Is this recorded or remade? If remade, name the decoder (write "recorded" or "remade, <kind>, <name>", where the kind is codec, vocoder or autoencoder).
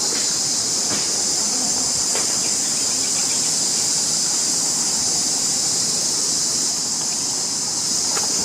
recorded